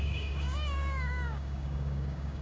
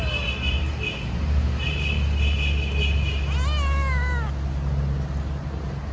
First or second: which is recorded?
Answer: second